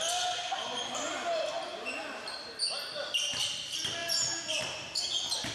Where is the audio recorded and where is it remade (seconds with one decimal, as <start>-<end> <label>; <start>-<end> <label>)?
0.0-5.5 recorded